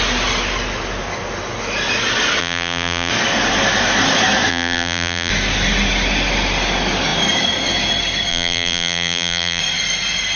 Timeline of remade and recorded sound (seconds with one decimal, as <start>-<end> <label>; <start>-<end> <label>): 0.0-2.4 recorded; 2.4-3.1 remade; 3.1-4.5 recorded; 4.5-5.3 remade; 5.3-8.3 recorded; 8.3-9.6 remade; 9.6-10.4 recorded